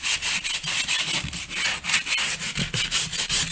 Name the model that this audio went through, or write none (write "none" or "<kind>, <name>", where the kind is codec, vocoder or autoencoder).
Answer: none